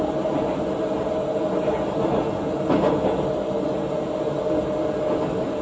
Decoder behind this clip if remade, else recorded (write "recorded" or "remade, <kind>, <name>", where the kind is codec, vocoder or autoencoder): recorded